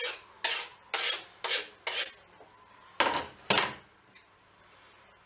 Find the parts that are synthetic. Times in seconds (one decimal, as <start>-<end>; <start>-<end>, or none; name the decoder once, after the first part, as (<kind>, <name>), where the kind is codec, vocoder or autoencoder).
none